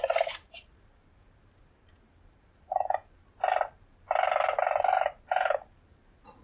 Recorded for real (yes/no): no